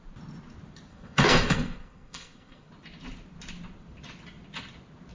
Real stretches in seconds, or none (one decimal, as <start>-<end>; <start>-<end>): 0.0-0.9; 2.7-5.1